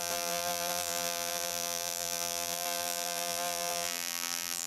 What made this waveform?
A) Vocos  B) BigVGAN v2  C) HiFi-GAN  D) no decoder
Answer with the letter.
B